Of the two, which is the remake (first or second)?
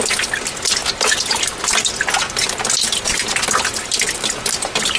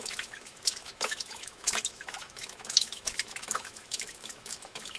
second